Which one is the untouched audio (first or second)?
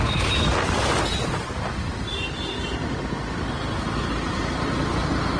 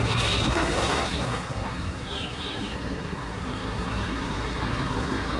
first